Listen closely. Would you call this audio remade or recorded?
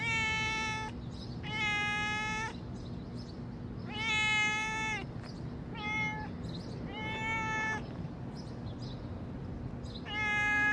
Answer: recorded